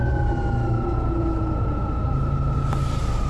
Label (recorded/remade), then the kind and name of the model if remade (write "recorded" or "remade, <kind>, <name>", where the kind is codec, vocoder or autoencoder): recorded